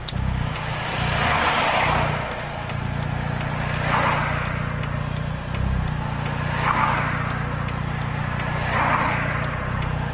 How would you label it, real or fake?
real